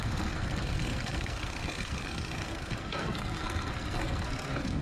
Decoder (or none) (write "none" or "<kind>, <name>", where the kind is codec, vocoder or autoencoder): codec, SNAC